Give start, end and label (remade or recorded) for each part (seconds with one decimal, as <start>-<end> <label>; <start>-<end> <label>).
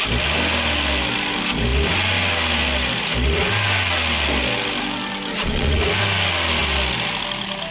0.0-5.3 recorded; 5.3-5.8 remade; 5.8-7.7 recorded